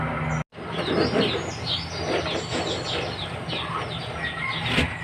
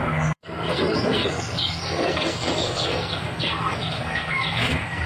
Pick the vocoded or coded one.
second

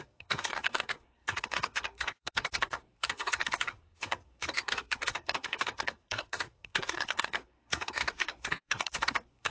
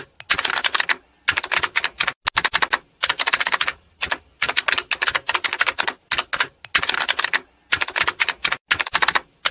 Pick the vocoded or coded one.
first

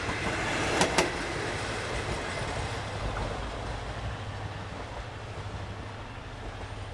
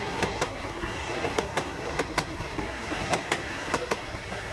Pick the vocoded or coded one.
second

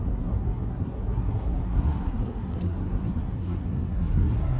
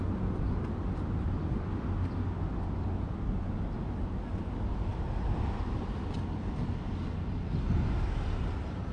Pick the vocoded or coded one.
first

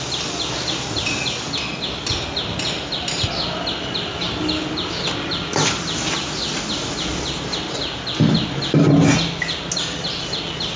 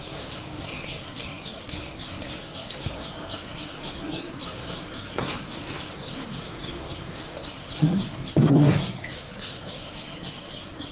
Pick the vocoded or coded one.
second